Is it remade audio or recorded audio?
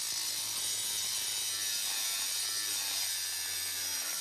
recorded